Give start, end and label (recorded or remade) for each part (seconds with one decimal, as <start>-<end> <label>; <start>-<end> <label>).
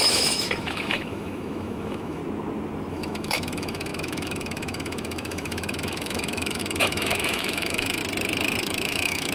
0.0-2.2 remade; 2.2-2.9 recorded; 2.9-8.0 remade; 8.0-8.6 recorded; 8.6-9.3 remade